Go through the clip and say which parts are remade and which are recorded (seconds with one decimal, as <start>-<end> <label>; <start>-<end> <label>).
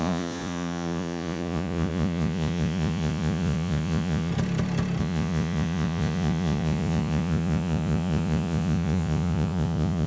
0.0-4.3 remade; 4.3-5.0 recorded; 5.0-10.1 remade